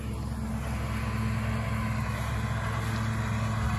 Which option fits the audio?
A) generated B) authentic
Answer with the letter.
B